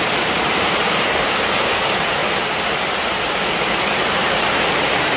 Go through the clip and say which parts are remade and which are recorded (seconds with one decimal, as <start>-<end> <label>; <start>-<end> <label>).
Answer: 0.0-2.2 remade; 2.2-4.0 recorded; 4.0-5.2 remade